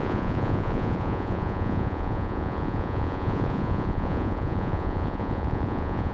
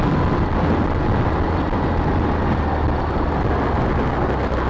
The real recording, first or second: second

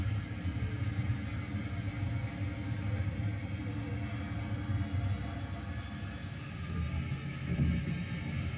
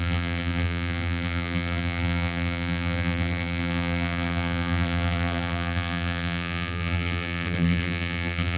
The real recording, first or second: first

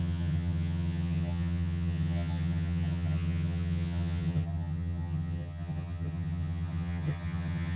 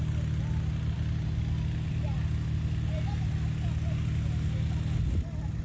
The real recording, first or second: second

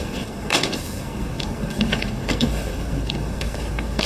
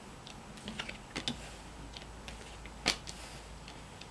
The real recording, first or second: second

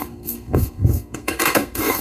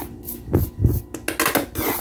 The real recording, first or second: second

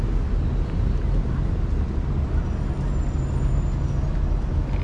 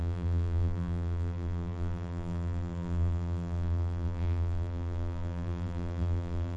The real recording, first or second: first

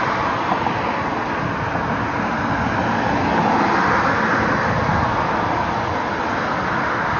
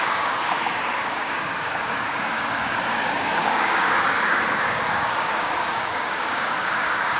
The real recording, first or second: first